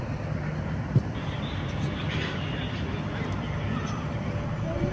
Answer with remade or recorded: remade